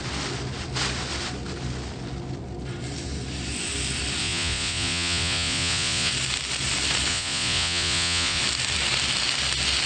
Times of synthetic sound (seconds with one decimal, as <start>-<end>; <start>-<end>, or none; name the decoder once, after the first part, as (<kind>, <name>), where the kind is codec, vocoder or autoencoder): 4.2-6.1 (vocoder, Vocos); 7.1-8.4